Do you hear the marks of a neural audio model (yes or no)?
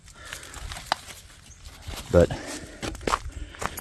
no